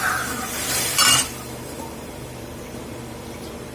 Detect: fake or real fake